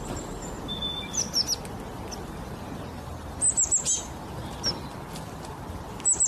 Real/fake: real